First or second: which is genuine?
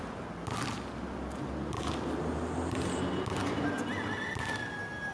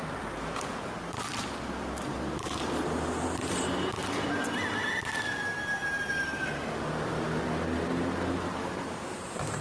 first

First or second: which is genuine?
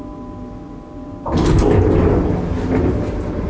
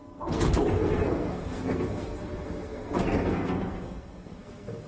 first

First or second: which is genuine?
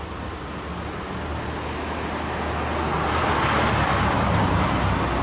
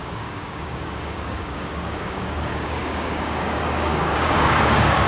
first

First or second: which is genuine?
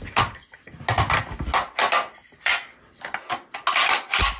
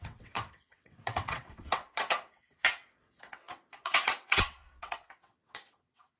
first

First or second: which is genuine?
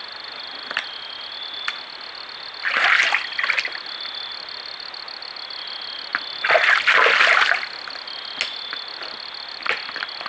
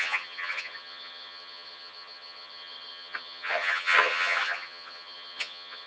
first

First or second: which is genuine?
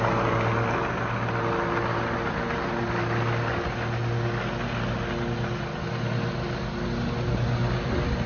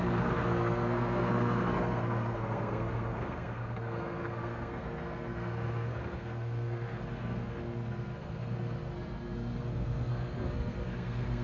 first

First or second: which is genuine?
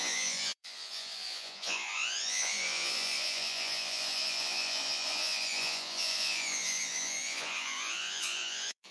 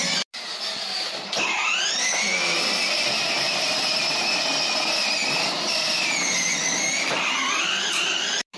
second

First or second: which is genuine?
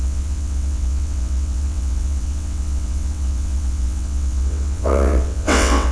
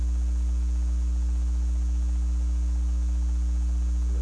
second